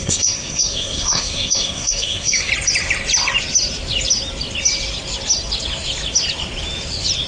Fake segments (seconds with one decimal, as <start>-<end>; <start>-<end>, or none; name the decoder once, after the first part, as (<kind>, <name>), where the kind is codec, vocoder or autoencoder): 0.0-2.5 (codec, SNAC)